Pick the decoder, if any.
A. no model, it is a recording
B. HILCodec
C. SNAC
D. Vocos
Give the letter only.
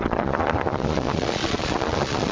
D